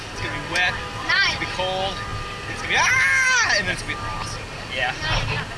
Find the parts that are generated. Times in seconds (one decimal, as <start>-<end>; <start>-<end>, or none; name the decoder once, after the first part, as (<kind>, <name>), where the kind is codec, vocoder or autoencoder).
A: 0.9-1.5 (vocoder, BigVGAN v2)